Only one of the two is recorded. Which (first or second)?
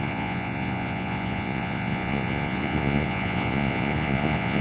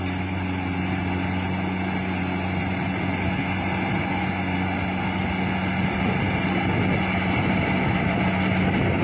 second